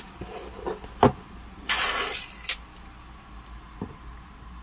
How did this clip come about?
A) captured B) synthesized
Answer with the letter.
A